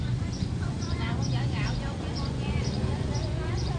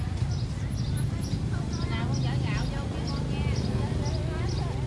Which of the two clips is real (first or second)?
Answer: second